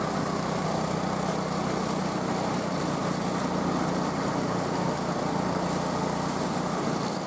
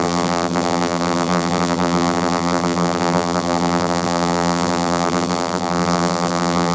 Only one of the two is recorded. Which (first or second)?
first